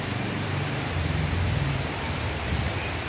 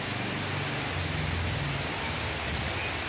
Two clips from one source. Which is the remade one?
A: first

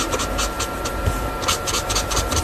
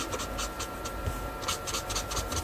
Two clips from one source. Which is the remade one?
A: first